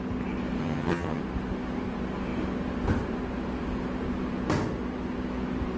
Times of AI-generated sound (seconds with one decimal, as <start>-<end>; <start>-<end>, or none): 0.6-1.2